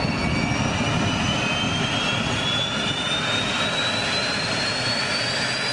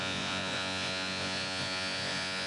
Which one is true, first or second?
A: first